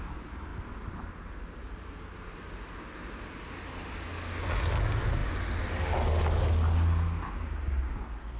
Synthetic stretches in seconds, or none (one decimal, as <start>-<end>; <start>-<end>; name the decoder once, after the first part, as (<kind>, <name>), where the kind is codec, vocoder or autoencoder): none